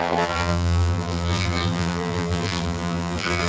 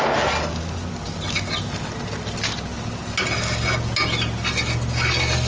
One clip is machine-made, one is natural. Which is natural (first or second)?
second